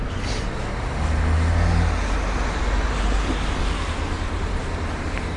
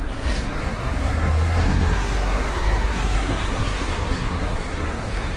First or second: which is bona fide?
first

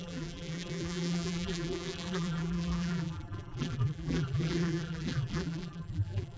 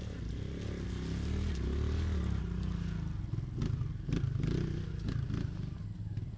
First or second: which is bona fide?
second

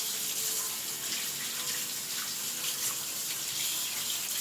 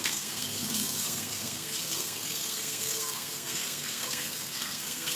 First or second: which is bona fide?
first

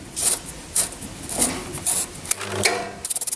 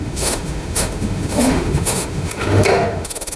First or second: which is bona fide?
first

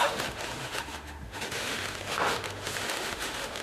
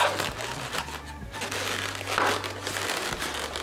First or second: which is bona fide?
second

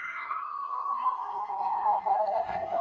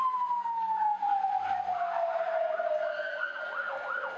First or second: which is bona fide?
second